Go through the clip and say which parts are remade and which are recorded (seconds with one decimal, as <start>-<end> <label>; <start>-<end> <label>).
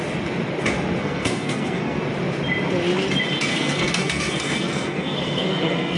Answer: 0.0-1.0 recorded; 1.0-2.0 remade; 2.0-3.5 recorded; 3.5-6.0 remade